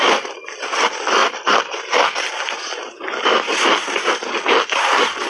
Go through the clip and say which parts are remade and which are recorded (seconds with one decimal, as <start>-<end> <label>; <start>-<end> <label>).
0.0-1.2 recorded; 1.2-2.4 remade; 2.4-5.3 recorded